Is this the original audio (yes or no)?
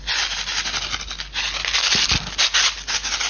yes